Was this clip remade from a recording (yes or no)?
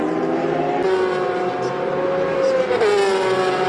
no